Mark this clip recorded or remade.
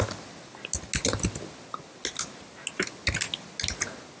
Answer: recorded